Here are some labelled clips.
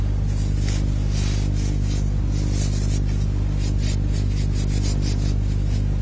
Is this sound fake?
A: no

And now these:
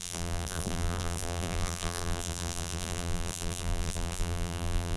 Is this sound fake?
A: yes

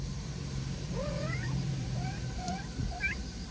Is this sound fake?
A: yes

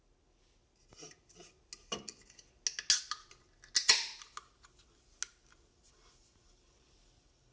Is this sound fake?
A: no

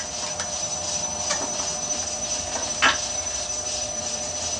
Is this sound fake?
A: no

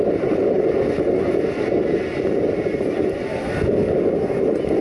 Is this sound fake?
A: no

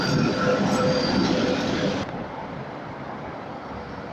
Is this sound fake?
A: no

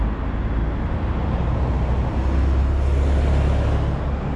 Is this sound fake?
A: no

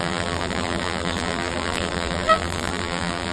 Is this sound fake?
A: yes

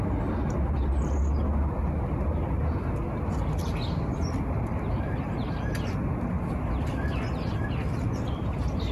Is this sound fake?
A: no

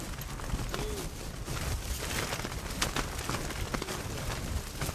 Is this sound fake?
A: no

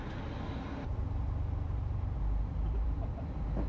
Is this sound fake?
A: yes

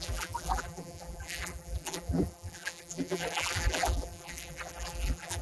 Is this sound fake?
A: yes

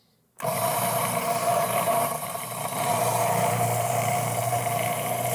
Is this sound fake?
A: yes